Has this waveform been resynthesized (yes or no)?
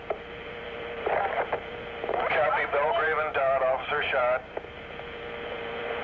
yes